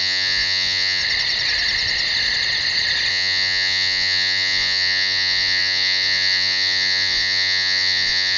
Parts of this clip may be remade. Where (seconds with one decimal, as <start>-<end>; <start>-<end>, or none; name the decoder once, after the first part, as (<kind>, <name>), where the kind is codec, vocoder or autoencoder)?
0.0-1.0 (vocoder, Vocos); 3.1-8.4